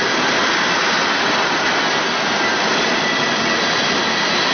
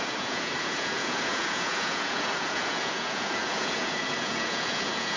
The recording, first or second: first